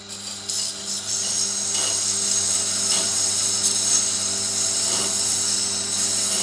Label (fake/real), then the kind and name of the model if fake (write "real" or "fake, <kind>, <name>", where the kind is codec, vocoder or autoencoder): real